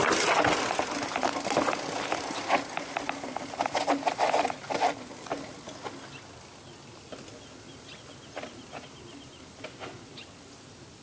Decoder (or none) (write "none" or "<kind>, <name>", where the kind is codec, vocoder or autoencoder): none